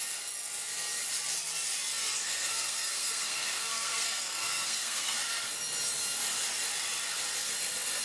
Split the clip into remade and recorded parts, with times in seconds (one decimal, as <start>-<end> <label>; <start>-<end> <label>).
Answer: 0.0-2.2 recorded; 2.2-5.5 remade; 5.5-8.0 recorded